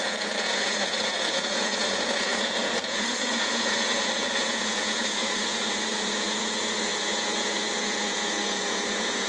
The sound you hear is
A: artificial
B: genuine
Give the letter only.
A